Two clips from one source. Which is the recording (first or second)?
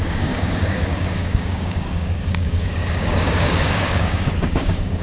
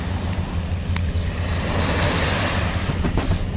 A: second